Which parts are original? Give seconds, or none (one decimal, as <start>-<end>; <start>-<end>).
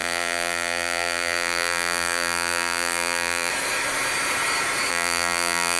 3.5-4.9